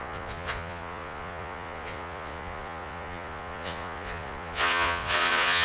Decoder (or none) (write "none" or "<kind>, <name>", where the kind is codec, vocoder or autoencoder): vocoder, Vocos